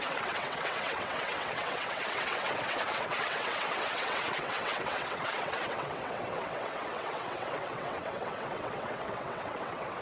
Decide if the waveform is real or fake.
fake